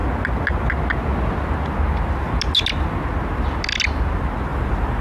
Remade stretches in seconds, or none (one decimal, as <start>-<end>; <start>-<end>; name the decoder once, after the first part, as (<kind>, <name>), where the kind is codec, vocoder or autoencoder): 4.5-5.0 (vocoder, BigVGAN v2)